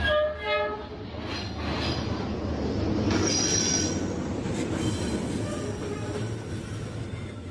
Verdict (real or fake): real